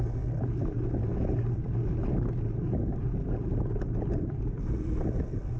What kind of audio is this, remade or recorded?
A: recorded